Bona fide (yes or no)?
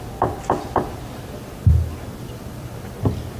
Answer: yes